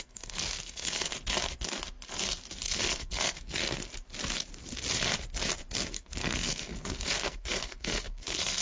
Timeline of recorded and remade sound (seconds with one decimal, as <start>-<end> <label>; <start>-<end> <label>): 0.0-1.1 remade; 1.1-2.6 recorded; 2.6-3.6 remade; 3.6-5.9 recorded; 5.9-8.6 remade